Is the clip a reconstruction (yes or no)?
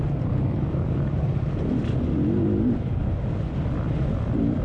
no